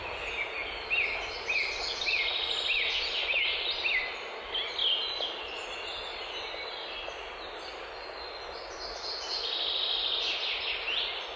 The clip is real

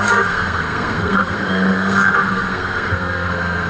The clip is fake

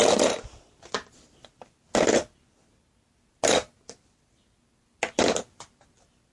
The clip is real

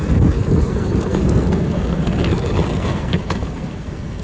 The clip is fake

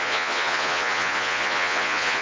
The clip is fake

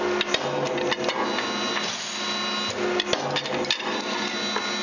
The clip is real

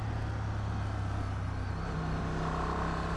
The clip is real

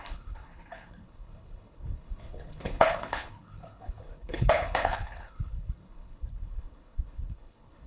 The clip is fake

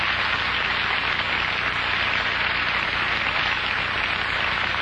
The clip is real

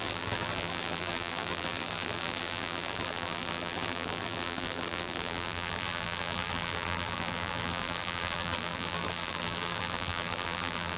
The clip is fake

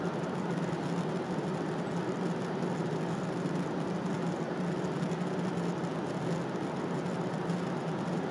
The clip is real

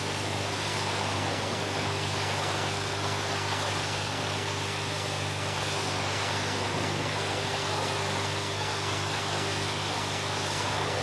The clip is fake